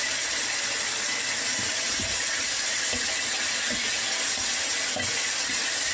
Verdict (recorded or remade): recorded